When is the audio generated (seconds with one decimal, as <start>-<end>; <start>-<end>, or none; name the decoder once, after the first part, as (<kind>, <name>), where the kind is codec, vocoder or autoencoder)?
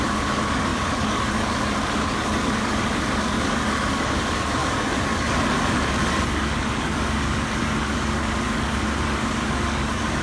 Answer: 0.0-10.2 (codec, DAC)